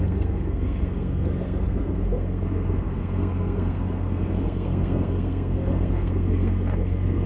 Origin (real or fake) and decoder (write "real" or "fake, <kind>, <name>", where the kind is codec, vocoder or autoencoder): fake, codec, SNAC